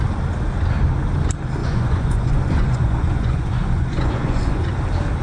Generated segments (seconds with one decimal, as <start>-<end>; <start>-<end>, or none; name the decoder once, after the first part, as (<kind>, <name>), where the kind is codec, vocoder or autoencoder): 1.6-4.7 (vocoder, Vocos)